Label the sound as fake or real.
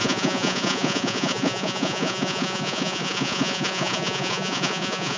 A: fake